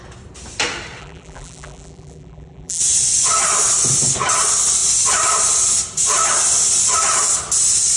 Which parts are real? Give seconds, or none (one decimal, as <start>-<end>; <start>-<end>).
0.0-1.0; 2.8-8.0